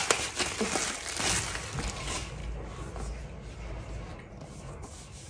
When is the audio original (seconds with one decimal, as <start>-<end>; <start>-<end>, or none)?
0.0-2.0; 2.4-4.6